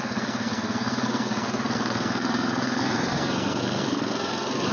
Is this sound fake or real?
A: fake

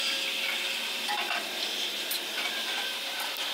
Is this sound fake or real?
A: real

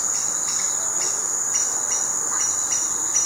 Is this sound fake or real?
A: real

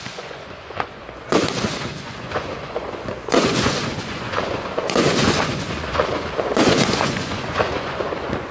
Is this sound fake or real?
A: fake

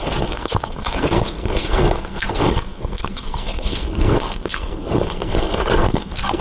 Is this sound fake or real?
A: fake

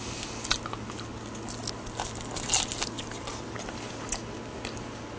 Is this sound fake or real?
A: real